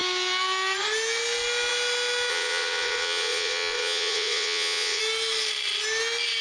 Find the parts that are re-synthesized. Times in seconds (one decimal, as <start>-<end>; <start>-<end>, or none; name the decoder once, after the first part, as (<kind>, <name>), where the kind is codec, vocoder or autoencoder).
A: 2.3-5.0 (vocoder, WaveNeXt)